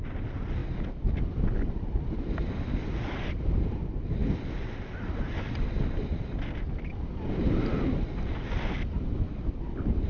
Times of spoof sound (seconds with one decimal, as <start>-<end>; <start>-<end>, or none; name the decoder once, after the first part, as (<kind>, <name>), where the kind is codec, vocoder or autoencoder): none